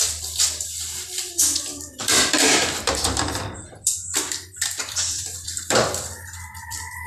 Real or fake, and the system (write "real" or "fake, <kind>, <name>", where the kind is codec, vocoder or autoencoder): fake, vocoder, BigVGAN v2